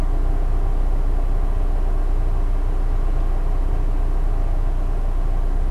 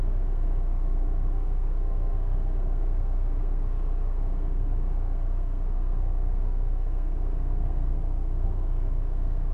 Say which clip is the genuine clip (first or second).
first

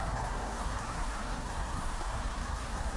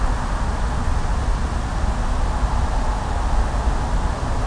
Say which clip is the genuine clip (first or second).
second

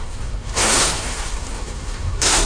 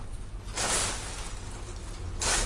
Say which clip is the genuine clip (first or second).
second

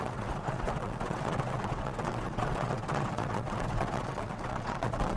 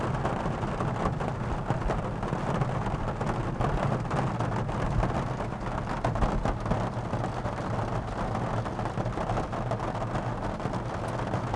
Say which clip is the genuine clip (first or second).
second